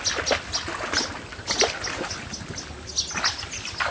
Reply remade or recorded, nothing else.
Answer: recorded